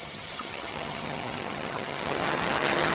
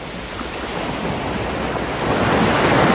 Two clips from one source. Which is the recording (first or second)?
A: second